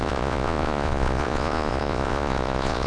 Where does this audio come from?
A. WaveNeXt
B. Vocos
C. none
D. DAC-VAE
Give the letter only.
B